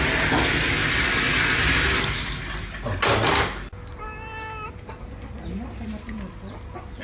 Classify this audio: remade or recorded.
recorded